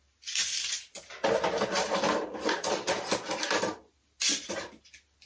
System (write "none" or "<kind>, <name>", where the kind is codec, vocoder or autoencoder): none